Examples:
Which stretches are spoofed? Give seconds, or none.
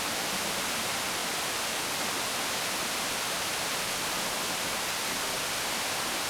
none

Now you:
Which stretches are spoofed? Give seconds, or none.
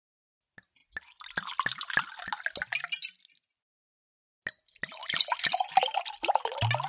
none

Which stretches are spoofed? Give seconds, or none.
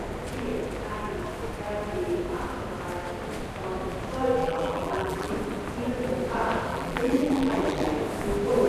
4.4-5.3; 6.7-7.9